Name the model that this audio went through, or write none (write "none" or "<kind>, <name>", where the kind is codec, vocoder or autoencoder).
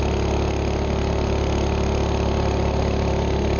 none